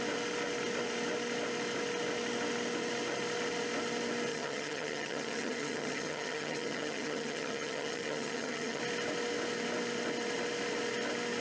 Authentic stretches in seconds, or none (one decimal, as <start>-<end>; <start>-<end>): 0.0-4.3; 8.8-11.4